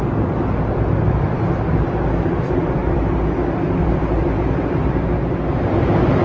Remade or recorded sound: remade